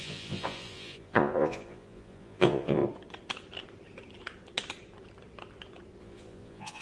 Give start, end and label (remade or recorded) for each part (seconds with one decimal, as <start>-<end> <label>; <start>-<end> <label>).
0.0-2.8 remade; 2.8-6.0 recorded; 6.0-6.8 remade